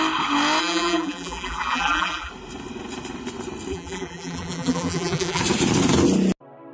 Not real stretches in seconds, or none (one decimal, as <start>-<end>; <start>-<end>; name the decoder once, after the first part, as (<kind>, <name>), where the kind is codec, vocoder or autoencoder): 0.6-2.3 (vocoder, BigVGAN v2); 3.7-5.4